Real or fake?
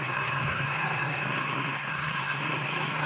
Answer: fake